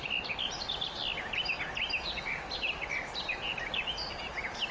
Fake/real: real